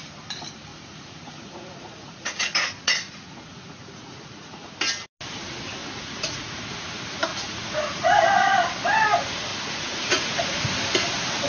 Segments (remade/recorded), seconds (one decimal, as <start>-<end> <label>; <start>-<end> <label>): 0.0-0.7 recorded; 0.7-4.7 remade; 4.7-5.8 recorded; 5.8-6.6 remade; 6.6-7.3 recorded; 7.3-8.2 remade; 8.2-9.5 recorded; 9.5-10.6 remade; 10.6-11.5 recorded